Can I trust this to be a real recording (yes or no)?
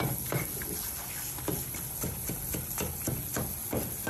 yes